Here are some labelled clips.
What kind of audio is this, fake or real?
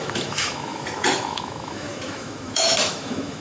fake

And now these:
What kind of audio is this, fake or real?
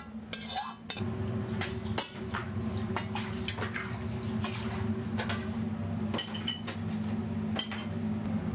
real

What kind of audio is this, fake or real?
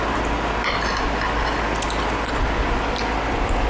real